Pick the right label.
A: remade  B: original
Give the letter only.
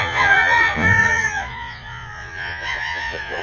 A